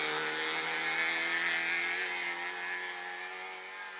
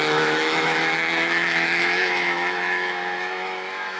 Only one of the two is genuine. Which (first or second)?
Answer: first